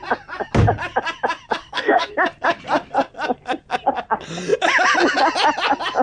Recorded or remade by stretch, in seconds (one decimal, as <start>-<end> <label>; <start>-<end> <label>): 0.0-1.6 recorded; 1.6-2.1 remade; 2.1-6.0 recorded